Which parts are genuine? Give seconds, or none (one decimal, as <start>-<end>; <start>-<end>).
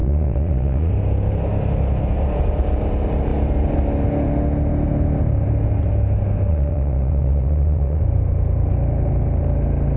0.9-6.5; 8.0-10.0